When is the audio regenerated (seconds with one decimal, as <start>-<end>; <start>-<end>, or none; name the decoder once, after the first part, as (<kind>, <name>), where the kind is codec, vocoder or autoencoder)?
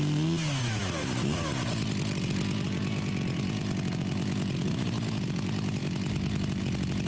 none